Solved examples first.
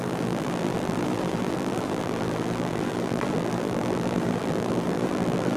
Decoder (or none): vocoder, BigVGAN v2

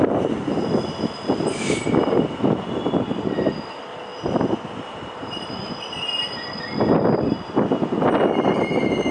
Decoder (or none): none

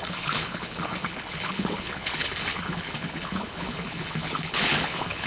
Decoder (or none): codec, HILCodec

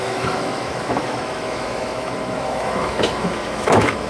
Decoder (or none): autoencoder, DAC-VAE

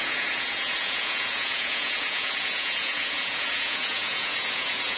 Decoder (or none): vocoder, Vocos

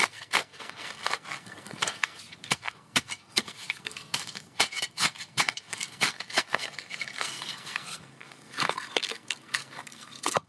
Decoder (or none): codec, SNAC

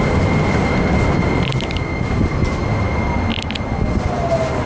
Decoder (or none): none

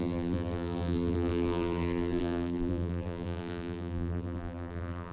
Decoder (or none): vocoder, BigVGAN v2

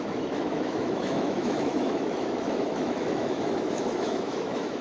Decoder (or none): autoencoder, DAC-VAE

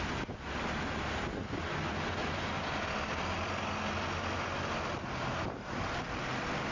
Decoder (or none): none